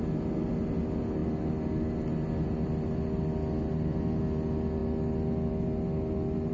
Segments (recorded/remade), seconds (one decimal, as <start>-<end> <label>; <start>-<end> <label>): 0.0-6.5 recorded